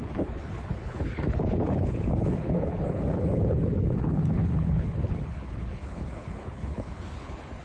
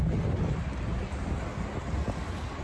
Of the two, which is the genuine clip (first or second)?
second